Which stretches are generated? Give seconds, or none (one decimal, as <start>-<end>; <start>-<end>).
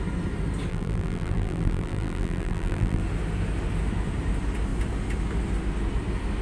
0.7-3.0